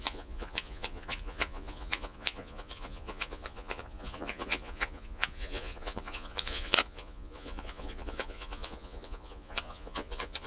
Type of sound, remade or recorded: remade